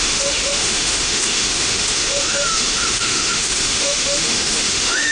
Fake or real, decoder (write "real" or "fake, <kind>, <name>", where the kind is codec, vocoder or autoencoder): fake, autoencoder, DAC-VAE